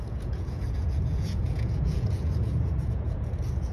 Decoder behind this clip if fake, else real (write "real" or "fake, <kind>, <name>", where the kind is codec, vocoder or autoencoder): fake, vocoder, Vocos